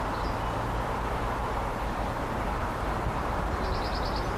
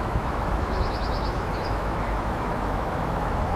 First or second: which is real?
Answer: first